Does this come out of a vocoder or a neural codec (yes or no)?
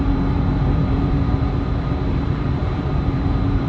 yes